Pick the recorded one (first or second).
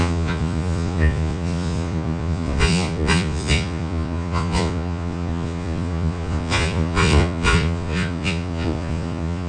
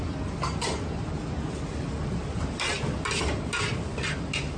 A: second